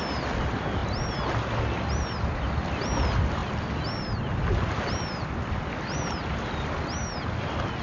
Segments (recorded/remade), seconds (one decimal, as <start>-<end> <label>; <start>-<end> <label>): 0.0-7.8 recorded